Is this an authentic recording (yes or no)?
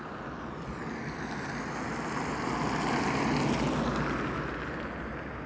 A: yes